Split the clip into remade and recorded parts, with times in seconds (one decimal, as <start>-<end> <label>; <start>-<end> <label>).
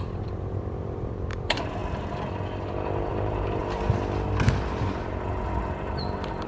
0.0-1.8 remade; 1.8-3.1 recorded; 3.1-3.6 remade; 3.6-5.6 recorded; 5.6-6.5 remade